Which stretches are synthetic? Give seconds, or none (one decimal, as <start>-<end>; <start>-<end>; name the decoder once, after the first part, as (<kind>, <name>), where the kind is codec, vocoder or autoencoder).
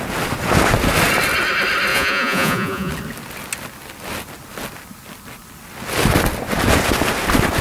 1.9-2.9 (vocoder, Vocos)